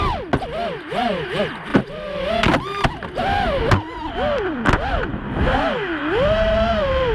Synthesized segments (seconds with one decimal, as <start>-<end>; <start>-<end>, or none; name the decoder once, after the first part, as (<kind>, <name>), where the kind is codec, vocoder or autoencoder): none